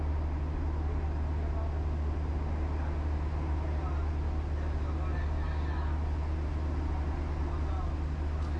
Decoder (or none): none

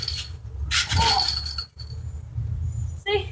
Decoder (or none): none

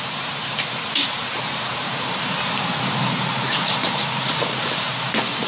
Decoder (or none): vocoder, BigVGAN v2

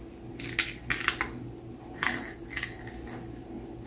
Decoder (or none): none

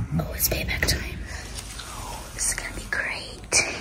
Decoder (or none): none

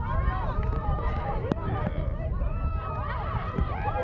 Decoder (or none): vocoder, BigVGAN v2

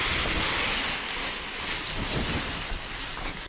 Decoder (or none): none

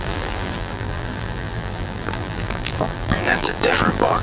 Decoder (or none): vocoder, BigVGAN v2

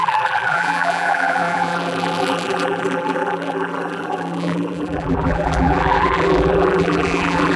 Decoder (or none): vocoder, BigVGAN v2